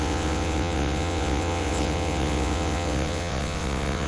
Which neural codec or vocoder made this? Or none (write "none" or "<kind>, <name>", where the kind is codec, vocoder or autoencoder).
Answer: vocoder, WaveNeXt